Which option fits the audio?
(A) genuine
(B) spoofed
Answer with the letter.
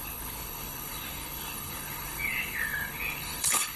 B